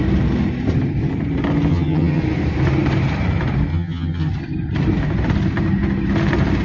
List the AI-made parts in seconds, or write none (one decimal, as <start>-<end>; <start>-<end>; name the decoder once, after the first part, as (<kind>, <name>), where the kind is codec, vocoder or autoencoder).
1.7-2.2 (vocoder, HiFi-GAN); 3.7-4.3